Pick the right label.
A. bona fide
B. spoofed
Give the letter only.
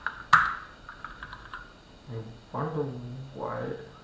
A